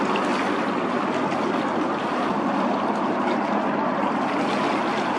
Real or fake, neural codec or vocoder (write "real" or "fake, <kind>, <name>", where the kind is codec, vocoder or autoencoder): real